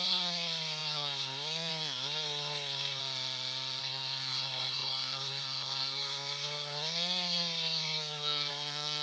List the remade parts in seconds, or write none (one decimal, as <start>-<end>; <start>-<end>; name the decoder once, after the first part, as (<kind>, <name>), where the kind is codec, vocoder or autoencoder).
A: 0.0-3.0 (codec, SNAC); 3.8-9.0